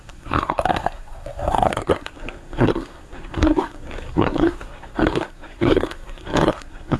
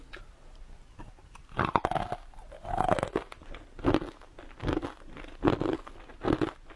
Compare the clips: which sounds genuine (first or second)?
second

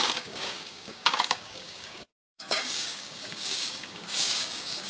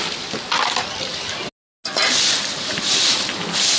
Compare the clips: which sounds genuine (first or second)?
second